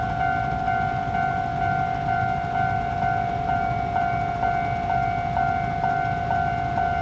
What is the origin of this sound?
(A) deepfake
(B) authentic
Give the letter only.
B